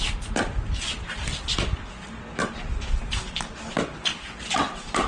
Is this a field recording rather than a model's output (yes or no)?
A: yes